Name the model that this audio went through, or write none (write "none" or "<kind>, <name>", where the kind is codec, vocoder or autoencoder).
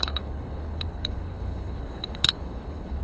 codec, HILCodec